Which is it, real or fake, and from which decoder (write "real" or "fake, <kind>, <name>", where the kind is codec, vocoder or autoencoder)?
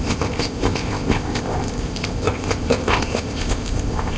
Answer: fake, codec, ZipCodec